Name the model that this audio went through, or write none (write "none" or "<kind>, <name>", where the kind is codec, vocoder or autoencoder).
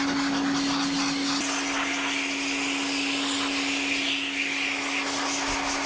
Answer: none